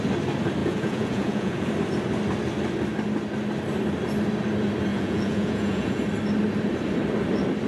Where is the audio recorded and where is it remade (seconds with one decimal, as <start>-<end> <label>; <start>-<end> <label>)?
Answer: 0.0-0.6 recorded; 0.6-1.7 remade; 1.7-4.9 recorded; 4.9-6.0 remade; 6.0-7.7 recorded